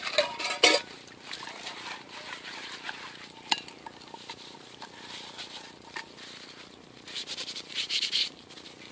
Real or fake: real